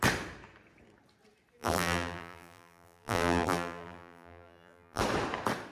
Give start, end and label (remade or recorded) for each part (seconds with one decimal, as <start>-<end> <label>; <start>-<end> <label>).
0.0-1.6 recorded; 1.6-5.0 remade; 5.0-5.7 recorded